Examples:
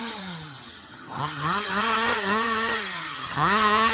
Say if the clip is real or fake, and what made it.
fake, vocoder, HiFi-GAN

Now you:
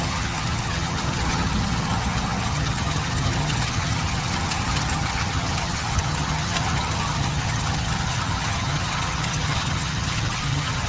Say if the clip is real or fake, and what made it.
fake, vocoder, HiFi-GAN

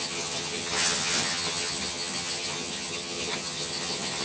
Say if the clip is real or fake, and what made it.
fake, vocoder, HiFi-GAN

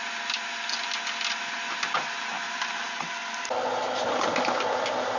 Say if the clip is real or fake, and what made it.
real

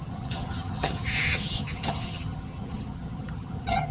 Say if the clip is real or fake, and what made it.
fake, vocoder, HiFi-GAN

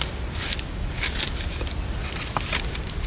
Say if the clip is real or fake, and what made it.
real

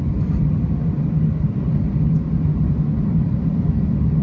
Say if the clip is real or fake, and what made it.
real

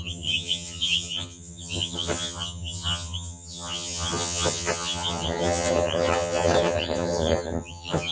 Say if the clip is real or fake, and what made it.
fake, vocoder, HiFi-GAN